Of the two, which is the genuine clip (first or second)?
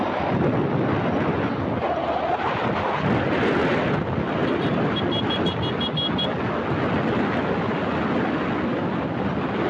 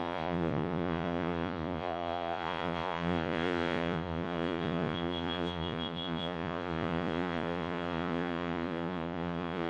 first